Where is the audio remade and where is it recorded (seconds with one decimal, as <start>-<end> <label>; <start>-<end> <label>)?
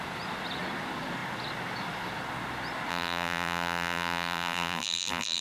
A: 0.0-2.9 recorded; 2.9-5.4 remade